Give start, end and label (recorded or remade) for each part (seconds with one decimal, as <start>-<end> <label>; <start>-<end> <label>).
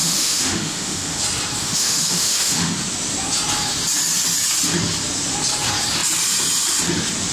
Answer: 0.0-1.2 remade; 1.2-1.6 recorded; 1.6-2.7 remade; 2.7-7.3 recorded